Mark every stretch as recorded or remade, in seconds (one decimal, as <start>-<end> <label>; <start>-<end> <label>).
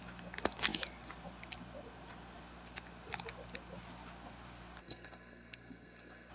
0.0-4.8 recorded; 4.8-6.3 remade